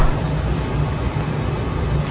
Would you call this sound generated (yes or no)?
no